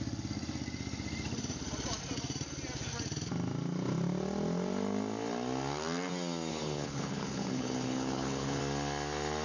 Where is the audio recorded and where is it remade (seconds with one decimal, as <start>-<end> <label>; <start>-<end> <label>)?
0.0-6.5 recorded; 6.5-8.6 remade; 8.6-9.4 recorded